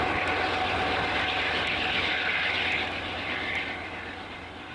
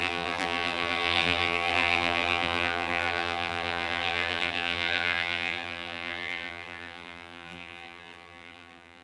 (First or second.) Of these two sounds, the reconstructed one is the second